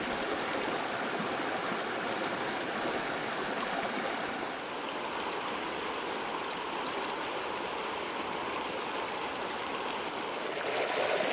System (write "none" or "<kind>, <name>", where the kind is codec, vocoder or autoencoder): none